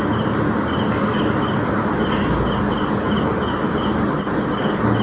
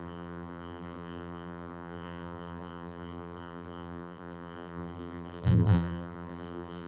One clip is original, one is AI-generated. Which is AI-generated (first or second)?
second